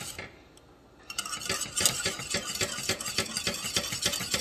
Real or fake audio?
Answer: real